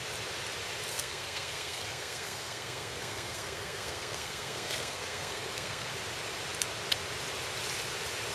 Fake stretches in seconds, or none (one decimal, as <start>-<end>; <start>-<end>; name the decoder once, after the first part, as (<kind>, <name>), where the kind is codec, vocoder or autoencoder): 0.9-5.9 (codec, SNAC)